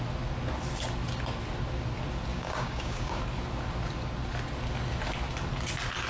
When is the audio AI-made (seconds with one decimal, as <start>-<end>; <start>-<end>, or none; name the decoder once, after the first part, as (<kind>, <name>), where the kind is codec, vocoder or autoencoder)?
2.3-3.2 (codec, DAC)